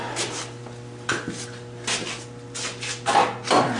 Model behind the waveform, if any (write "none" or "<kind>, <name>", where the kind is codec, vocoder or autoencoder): none